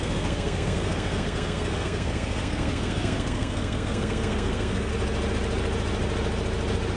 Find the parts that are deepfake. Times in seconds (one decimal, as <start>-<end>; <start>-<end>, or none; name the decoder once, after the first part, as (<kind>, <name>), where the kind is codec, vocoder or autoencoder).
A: 0.0-4.9 (codec, SNAC)